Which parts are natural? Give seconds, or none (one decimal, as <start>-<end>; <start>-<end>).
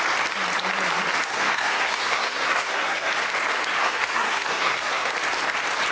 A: 0.0-1.3; 3.1-3.8; 5.1-5.9